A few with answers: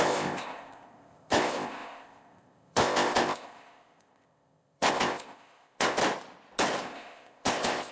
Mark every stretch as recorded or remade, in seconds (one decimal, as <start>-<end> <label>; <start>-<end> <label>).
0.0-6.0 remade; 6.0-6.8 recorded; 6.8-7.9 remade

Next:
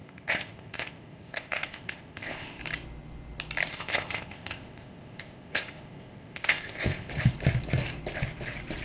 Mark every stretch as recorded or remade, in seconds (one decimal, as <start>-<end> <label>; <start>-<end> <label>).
0.0-2.6 remade; 2.6-3.7 recorded; 3.7-7.1 remade; 7.1-8.8 recorded

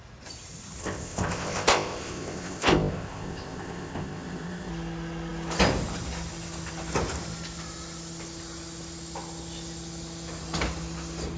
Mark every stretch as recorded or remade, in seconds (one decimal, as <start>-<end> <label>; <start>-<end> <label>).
0.0-0.8 recorded; 0.8-4.7 remade; 4.7-11.4 recorded

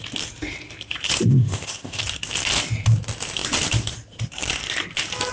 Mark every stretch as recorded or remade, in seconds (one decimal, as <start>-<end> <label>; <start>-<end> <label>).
0.0-1.3 recorded; 1.3-2.0 remade; 2.0-5.3 recorded

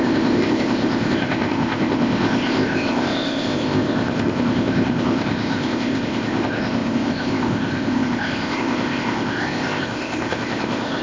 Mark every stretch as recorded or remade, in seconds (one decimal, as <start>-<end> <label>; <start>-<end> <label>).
0.0-11.0 remade